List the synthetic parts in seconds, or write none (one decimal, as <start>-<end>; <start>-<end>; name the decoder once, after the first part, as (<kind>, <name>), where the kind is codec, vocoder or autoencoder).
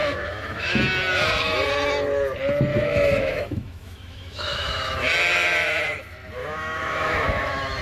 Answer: 0.0-0.8 (autoencoder, DAC-VAE); 2.7-5.1; 6.4-7.8